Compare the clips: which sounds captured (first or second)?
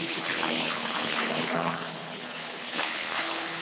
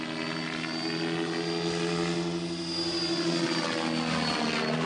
second